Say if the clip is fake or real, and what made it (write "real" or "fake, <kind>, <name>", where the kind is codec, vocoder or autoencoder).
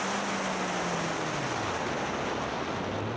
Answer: real